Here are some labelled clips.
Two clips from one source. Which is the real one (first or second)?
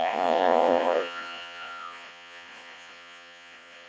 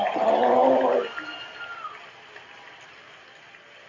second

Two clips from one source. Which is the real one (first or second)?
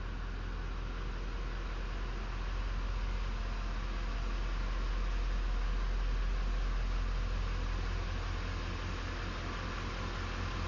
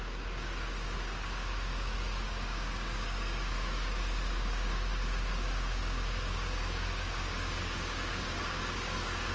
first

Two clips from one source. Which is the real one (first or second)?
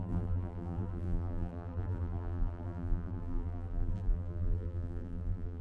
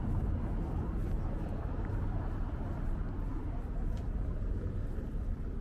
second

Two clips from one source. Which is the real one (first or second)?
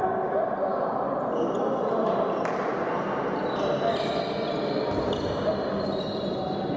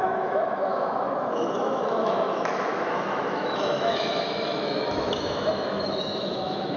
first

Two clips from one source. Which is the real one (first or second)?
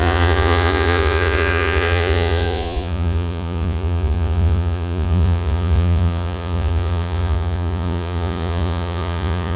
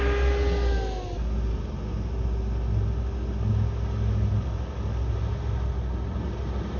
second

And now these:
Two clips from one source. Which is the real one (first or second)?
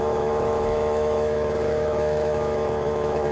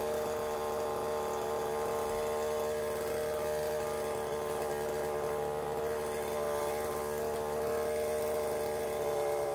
second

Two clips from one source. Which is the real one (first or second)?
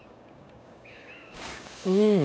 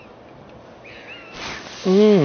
second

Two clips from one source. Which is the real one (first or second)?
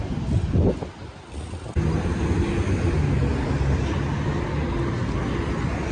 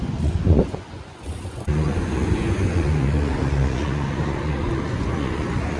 first